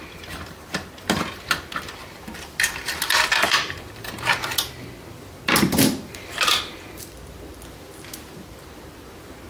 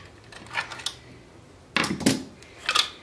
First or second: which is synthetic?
first